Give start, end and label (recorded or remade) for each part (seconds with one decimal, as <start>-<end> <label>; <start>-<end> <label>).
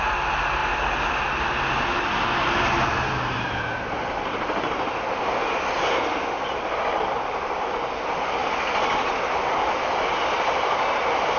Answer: 0.0-8.4 recorded; 8.4-10.1 remade; 10.1-11.4 recorded